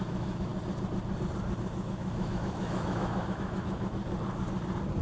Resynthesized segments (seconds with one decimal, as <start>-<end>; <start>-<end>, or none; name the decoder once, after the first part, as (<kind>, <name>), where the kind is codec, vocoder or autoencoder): 0.0-0.5 (autoencoder, DAC-VAE); 1.6-4.0

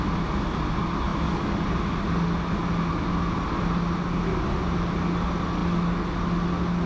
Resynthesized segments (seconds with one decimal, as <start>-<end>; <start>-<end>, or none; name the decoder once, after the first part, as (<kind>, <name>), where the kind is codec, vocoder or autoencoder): none

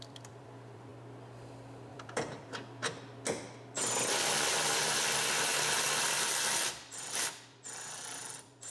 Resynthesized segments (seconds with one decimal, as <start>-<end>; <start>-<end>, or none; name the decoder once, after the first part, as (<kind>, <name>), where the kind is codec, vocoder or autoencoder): 0.0-0.9 (vocoder, BigVGAN v2); 1.9-2.8; 4.1-5.5; 6.0-8.7

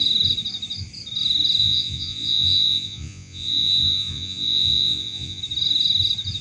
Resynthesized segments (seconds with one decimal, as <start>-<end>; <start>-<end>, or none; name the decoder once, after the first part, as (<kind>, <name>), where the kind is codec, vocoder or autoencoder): 1.6-5.4 (vocoder, Vocos)